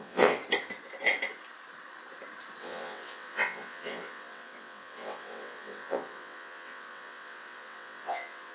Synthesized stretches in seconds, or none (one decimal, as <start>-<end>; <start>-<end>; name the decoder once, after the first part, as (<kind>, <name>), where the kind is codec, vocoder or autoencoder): 0.0-0.4 (vocoder, WaveNeXt); 2.6-8.5